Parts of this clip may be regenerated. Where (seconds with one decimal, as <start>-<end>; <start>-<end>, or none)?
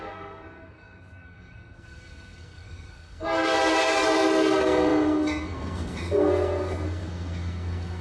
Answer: 0.0-8.0